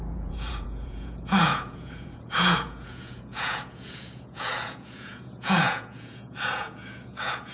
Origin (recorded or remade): remade